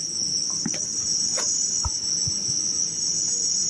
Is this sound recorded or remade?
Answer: recorded